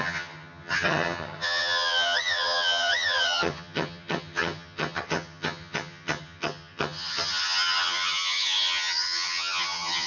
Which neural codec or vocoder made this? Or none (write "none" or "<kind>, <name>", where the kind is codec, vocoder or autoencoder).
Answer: vocoder, HiFi-GAN